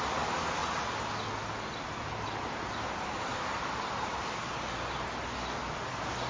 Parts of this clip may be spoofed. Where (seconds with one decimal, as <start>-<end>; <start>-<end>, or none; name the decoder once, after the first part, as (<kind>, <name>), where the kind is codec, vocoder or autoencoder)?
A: none